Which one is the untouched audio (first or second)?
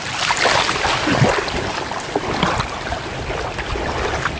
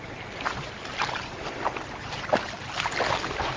second